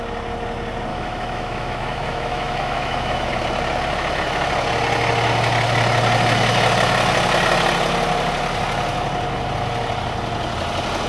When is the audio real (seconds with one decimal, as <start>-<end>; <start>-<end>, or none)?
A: 0.0-0.9; 3.3-11.1